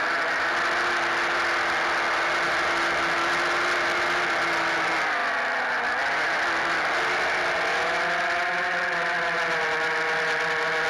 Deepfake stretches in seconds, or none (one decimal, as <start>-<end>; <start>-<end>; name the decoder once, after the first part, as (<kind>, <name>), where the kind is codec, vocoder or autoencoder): none